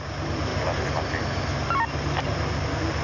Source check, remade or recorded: recorded